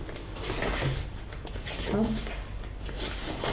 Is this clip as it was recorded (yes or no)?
yes